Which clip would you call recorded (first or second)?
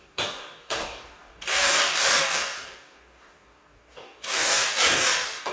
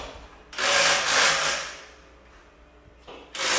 second